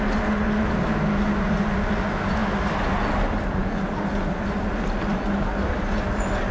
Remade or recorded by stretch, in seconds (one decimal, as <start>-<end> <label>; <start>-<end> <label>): 0.0-6.5 recorded